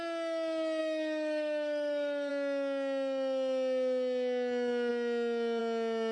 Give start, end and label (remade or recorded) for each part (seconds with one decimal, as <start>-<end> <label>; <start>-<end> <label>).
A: 0.0-0.8 recorded; 0.8-2.3 remade; 2.3-6.1 recorded